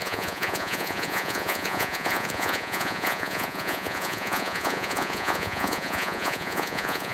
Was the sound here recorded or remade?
remade